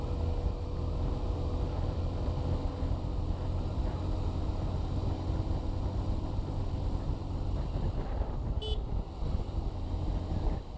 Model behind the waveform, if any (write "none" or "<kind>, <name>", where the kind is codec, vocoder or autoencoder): none